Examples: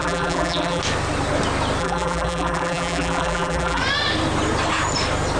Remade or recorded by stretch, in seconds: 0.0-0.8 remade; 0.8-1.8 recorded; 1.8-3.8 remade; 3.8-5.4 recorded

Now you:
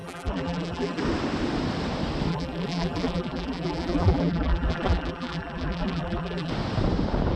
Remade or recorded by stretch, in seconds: 0.0-1.0 remade; 1.0-2.3 recorded; 2.3-6.5 remade; 6.5-7.4 recorded

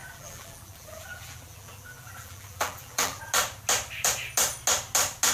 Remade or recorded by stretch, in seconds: 0.0-3.2 remade; 3.2-5.3 recorded

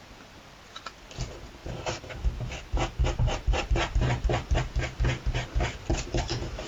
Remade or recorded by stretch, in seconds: 0.0-1.6 recorded; 1.6-2.1 remade; 2.1-3.0 recorded; 3.0-4.6 remade; 4.6-5.9 recorded; 5.9-6.7 remade

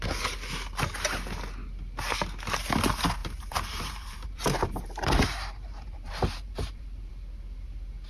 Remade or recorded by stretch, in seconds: 0.0-3.2 recorded; 3.2-7.1 remade; 7.1-8.1 recorded

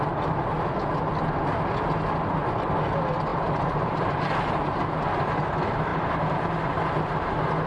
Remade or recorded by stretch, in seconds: 0.0-3.3 recorded; 3.3-4.4 remade; 4.4-5.9 recorded; 5.9-6.9 remade; 6.9-7.7 recorded

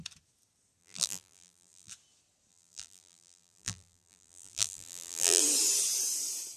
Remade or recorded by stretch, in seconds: 0.0-0.8 recorded; 0.8-1.9 remade; 1.9-2.5 recorded; 2.5-5.4 remade; 5.4-6.6 recorded